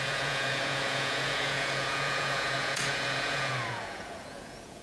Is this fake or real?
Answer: fake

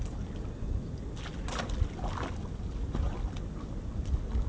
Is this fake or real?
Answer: real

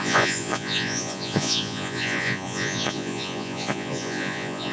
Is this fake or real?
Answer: fake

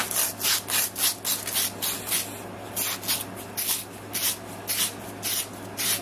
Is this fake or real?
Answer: real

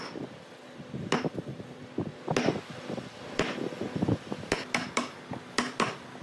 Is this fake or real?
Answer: real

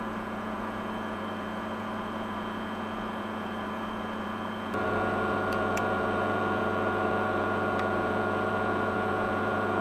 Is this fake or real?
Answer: fake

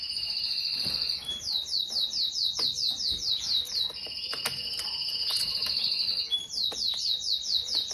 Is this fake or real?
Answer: real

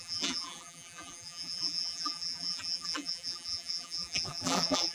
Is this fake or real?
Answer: fake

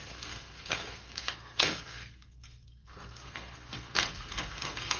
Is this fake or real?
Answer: fake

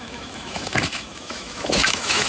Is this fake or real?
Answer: fake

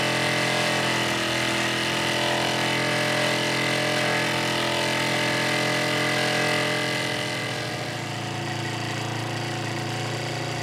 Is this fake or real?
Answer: real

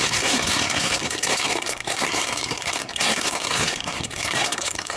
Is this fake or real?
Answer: fake